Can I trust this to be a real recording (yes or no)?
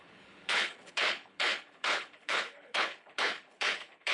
no